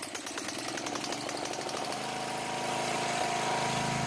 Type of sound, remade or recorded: recorded